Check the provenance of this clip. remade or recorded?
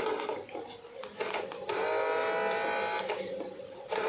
recorded